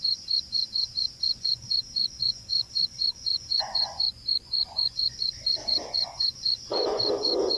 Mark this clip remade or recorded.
remade